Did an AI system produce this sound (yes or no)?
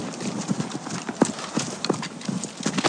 no